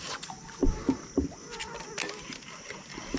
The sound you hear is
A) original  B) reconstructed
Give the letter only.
A